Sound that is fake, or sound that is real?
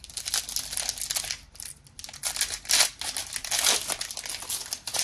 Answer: real